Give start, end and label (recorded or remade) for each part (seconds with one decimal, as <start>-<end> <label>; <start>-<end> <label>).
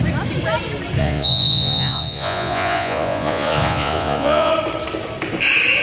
0.0-1.0 recorded; 1.0-4.5 remade; 4.5-5.8 recorded